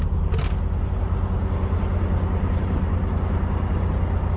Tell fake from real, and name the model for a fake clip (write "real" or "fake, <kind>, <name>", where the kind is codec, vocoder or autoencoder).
real